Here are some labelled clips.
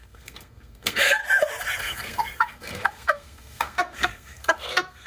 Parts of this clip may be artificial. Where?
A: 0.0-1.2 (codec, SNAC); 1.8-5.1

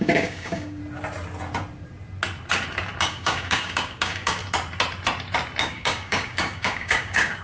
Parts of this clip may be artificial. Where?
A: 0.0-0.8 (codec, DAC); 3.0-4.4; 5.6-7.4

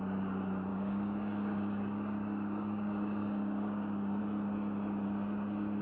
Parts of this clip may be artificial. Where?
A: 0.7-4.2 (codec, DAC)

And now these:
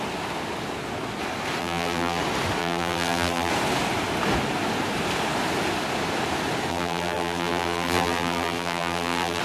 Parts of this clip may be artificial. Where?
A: 1.6-2.2 (vocoder, BigVGAN v2); 2.6-3.5; 6.7-9.4

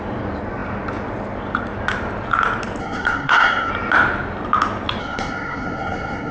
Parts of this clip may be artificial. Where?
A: 2.8-3.7 (codec, SNAC); 5.0-6.3